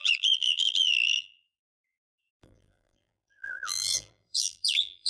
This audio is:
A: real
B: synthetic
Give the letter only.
B